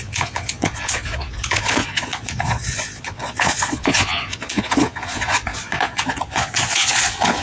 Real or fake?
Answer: fake